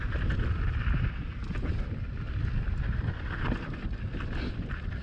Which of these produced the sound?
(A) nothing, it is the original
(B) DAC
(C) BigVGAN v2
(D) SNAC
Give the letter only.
A